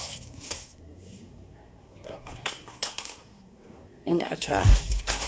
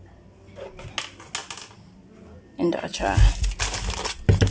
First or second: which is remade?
first